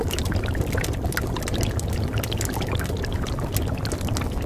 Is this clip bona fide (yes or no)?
yes